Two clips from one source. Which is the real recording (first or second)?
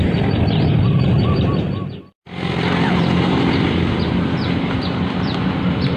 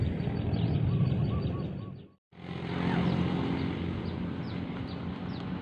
second